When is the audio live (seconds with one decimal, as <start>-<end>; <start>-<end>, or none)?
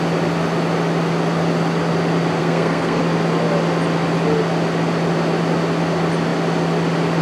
0.0-2.4; 3.0-7.2